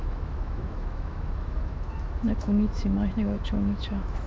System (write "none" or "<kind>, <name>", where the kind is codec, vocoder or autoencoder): autoencoder, DAC-VAE